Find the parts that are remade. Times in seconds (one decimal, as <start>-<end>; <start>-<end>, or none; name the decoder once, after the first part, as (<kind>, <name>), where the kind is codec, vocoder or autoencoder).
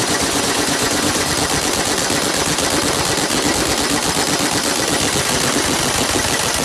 0.0-1.3 (vocoder, Vocos)